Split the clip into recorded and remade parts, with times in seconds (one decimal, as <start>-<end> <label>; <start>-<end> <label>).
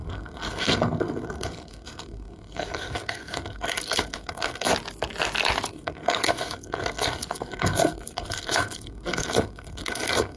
0.0-4.7 remade; 4.7-5.7 recorded; 5.7-10.4 remade